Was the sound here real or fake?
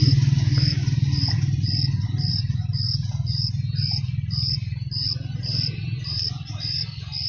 real